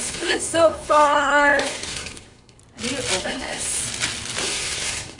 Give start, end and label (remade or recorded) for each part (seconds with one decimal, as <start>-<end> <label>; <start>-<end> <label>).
0.0-2.6 remade; 2.6-3.2 recorded; 3.2-3.8 remade; 3.8-4.4 recorded; 4.4-5.2 remade